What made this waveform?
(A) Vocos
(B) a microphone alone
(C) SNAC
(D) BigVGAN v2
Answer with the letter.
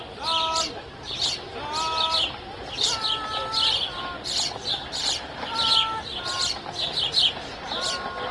B